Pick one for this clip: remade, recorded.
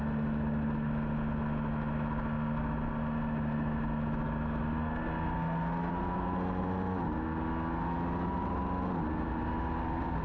recorded